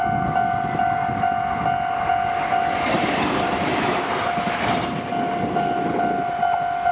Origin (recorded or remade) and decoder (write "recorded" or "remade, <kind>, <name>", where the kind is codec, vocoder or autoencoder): recorded